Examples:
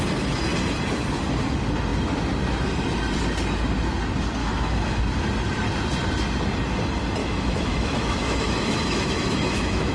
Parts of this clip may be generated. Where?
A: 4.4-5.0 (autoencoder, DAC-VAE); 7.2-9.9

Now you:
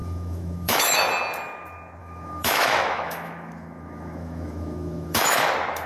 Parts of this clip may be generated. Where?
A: 0.0-1.0 (autoencoder, DAC-VAE); 2.0-5.5

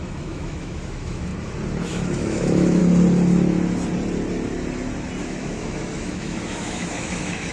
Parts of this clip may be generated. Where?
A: 0.0-1.3 (autoencoder, DAC-VAE); 1.8-2.8; 5.2-7.5

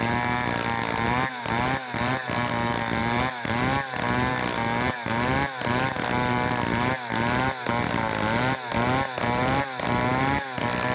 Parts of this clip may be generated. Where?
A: none

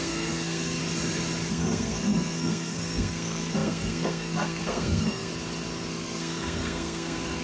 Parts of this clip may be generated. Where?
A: 0.0-0.8 (codec, SNAC); 1.5-5.3; 5.9-7.4

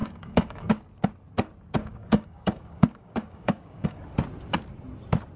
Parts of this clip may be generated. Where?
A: 0.0-0.7 (codec, DAC); 1.8-4.0

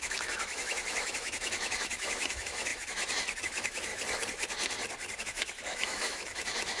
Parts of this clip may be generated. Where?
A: 0.0-3.9 (autoencoder, DAC-VAE); 5.2-6.8

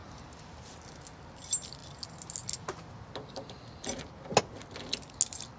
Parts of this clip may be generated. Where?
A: none